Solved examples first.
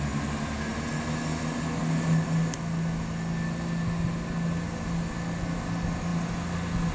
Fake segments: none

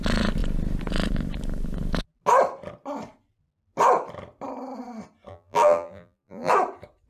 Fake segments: 5.3-6.5 (vocoder, BigVGAN v2)

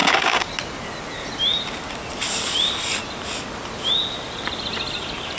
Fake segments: 0.0-0.5 (codec, DAC)

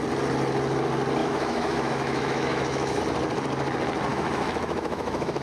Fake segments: 1.2-3.0 (autoencoder, DAC-VAE); 4.1-5.4

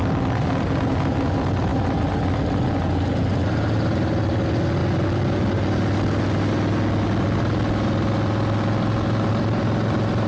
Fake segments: none

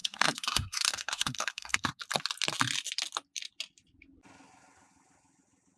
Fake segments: 0.0-2.0 (codec, SNAC)

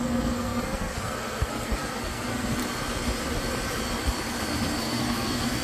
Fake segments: 0.0-2.6 (codec, SNAC); 4.8-5.6

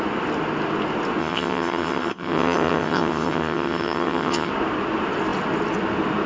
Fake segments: 1.2-4.5 (vocoder, HiFi-GAN)